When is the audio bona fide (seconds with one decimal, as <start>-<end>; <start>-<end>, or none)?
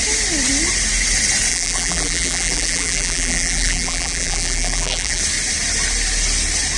0.0-1.5; 5.2-6.8